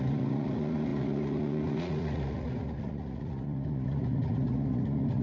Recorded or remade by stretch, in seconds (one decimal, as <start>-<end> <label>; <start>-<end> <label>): 0.0-5.2 remade